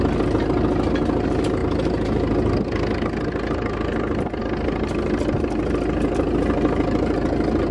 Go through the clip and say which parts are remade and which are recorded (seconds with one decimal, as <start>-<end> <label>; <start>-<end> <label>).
0.0-7.7 recorded